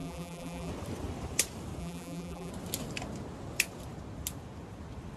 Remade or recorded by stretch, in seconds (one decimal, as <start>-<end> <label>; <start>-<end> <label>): 0.0-0.7 remade; 0.7-1.8 recorded; 1.8-2.5 remade; 2.5-5.2 recorded